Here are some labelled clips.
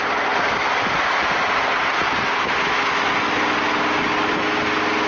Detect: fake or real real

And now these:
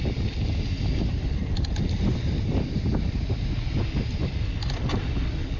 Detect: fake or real real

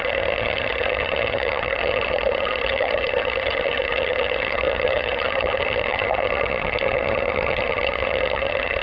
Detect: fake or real fake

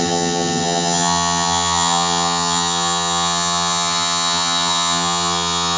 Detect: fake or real fake